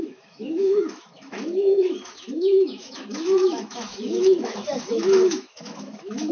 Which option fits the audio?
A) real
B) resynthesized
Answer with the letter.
B